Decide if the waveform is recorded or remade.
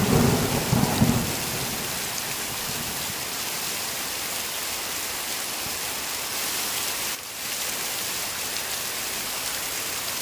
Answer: recorded